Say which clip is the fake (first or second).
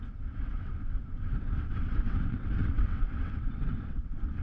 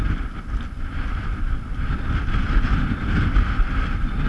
first